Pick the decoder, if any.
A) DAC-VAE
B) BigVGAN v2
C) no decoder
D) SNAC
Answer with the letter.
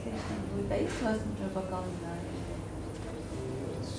C